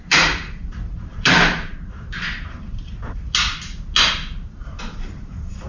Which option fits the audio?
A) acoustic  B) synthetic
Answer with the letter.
A